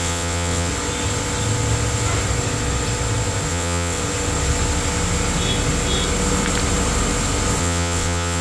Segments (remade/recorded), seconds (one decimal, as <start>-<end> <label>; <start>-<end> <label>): 0.0-0.7 remade; 0.7-3.5 recorded; 3.5-4.0 remade; 4.0-7.6 recorded; 7.6-8.4 remade